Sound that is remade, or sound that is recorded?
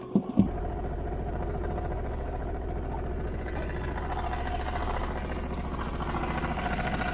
recorded